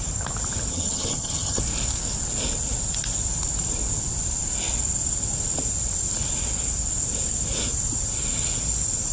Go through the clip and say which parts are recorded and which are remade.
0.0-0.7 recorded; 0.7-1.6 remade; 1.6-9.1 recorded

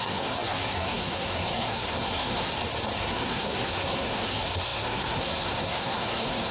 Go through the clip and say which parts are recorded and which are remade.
0.0-2.5 remade; 2.5-3.0 recorded; 3.0-6.5 remade